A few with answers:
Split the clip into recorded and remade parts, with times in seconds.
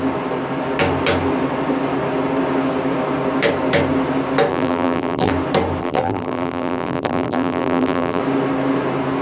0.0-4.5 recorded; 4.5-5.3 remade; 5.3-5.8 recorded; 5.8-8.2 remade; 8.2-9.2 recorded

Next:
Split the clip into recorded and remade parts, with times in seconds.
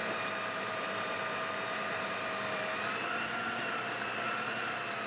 0.0-5.1 remade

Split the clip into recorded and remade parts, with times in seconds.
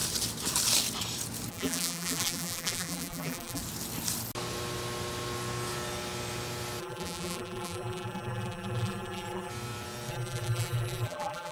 0.0-1.5 recorded; 1.5-3.6 remade; 3.6-6.8 recorded; 6.8-9.5 remade; 9.5-10.1 recorded; 10.1-11.5 remade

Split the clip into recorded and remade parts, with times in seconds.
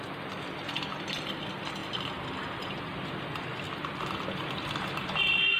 0.0-5.6 recorded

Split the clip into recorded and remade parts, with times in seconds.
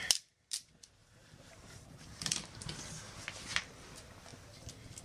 0.0-1.0 recorded; 1.0-1.7 remade; 1.7-5.0 recorded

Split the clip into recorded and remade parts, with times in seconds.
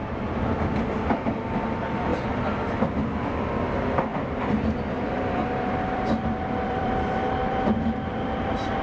0.0-2.1 recorded; 2.1-2.7 remade; 2.7-4.1 recorded; 4.1-8.8 remade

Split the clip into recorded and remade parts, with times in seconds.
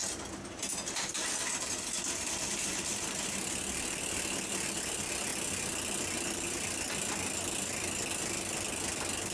0.0-1.2 recorded; 1.2-5.3 remade; 5.3-8.1 recorded; 8.1-9.3 remade